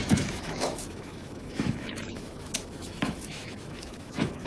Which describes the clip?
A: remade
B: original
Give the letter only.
A